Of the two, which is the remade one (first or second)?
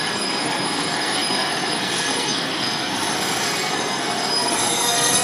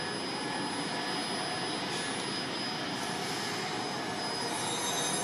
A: first